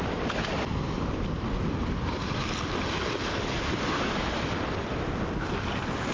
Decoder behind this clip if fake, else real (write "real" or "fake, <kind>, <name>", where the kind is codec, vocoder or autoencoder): real